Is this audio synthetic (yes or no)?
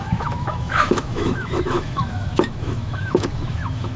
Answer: yes